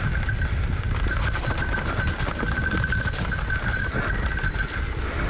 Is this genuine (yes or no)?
yes